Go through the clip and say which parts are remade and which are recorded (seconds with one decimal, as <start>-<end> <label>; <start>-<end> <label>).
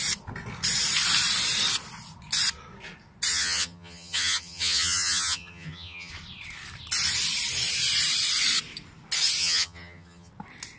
0.0-3.3 recorded; 3.3-6.1 remade; 6.1-9.4 recorded; 9.4-10.3 remade; 10.3-10.8 recorded